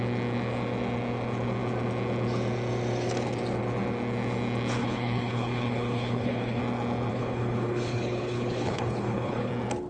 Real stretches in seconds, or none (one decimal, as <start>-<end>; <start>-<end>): 0.0-4.8; 6.6-7.1; 9.5-9.9